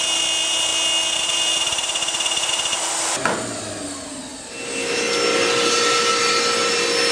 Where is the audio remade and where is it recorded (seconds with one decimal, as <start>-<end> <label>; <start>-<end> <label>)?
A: 0.0-7.1 recorded